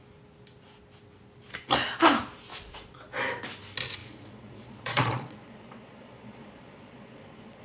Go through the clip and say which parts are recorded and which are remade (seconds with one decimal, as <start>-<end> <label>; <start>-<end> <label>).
0.0-2.5 recorded; 2.5-3.1 remade; 3.1-4.0 recorded; 4.0-7.6 remade